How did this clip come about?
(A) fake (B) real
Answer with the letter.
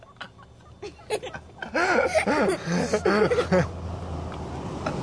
B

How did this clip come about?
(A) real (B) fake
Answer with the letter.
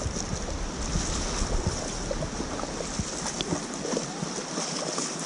A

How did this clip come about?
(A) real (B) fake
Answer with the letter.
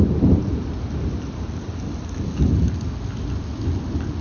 A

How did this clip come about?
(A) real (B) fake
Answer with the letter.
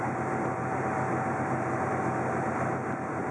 A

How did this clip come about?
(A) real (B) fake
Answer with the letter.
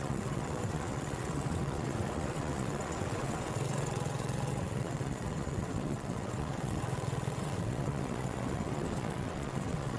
B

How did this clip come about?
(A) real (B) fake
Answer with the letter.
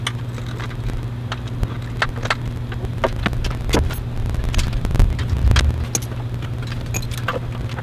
A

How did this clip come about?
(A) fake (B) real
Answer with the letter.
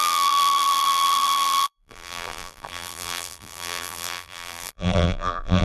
A